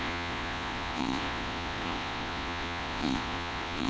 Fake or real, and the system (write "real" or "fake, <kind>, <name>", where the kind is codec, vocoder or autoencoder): fake, vocoder, Vocos